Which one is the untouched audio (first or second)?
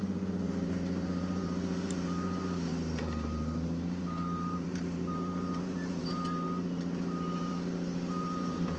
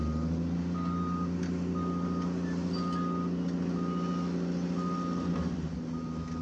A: second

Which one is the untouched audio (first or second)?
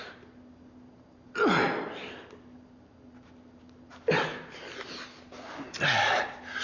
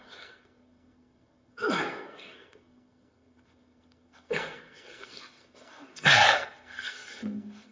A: first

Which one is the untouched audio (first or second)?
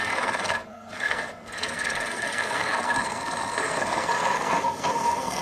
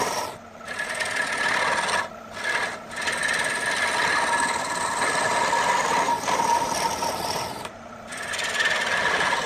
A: second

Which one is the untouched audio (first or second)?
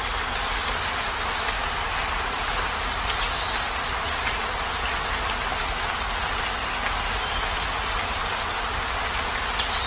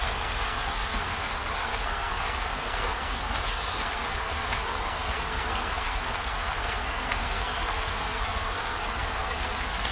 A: first